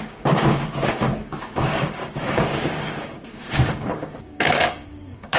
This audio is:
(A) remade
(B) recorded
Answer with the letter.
A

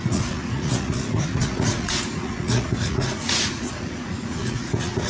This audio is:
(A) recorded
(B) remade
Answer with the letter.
B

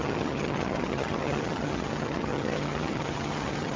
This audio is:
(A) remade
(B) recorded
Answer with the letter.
A